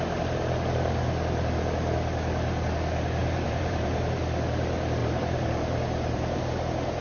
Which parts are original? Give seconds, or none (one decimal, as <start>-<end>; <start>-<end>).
0.0-3.2; 4.2-5.0; 6.4-7.0